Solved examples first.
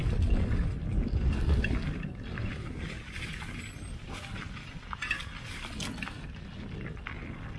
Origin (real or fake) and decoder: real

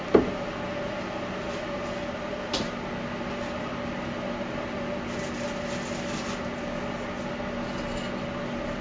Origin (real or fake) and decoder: real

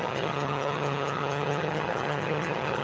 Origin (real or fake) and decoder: fake, vocoder, HiFi-GAN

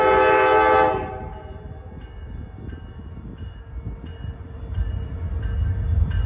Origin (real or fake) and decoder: real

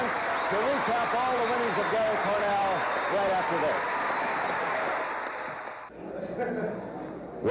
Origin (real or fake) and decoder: real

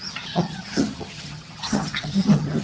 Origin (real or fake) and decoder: fake, vocoder, HiFi-GAN